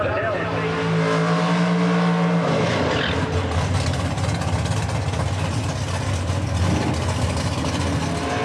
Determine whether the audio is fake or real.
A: real